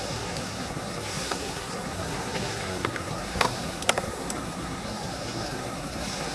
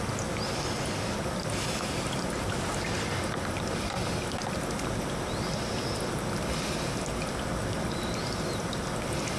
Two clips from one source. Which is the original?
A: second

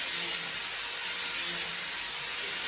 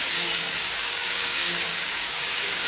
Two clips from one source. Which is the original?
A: first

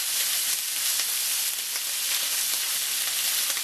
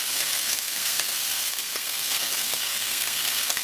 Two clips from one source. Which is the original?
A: first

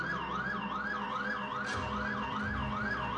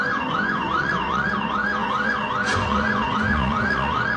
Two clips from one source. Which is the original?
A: first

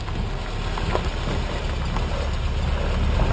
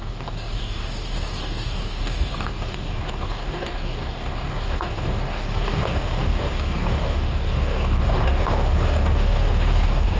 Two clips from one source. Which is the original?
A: first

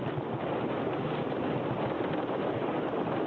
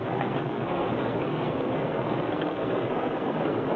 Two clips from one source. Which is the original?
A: first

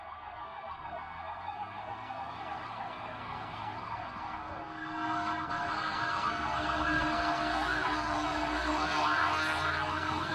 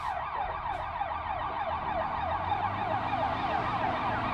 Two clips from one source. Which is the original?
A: second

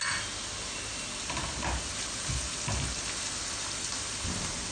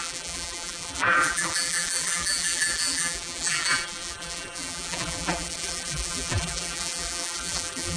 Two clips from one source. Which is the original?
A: first